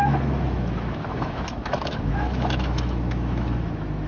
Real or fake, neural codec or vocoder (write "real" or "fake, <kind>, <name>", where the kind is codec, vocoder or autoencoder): fake, autoencoder, DAC-VAE